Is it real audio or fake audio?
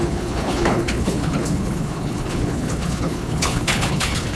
fake